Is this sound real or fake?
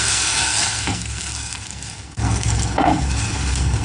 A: fake